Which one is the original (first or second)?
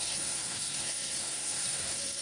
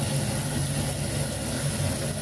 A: second